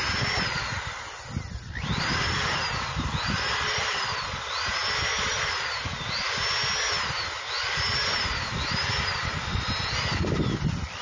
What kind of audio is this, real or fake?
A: real